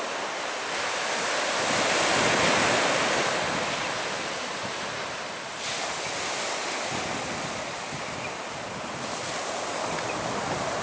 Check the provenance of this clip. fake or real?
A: real